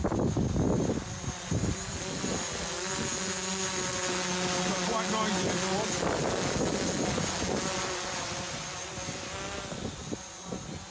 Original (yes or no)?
yes